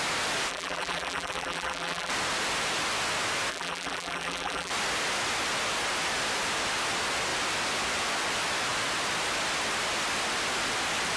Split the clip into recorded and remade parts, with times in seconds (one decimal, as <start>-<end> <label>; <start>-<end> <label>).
0.0-0.5 recorded; 0.5-2.1 remade; 2.1-3.5 recorded; 3.5-4.7 remade; 4.7-11.2 recorded